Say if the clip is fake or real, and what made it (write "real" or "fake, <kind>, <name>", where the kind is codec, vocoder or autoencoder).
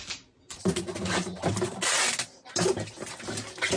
real